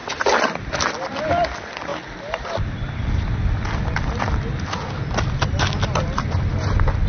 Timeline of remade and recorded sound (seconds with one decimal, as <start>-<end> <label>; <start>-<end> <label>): 0.0-7.1 recorded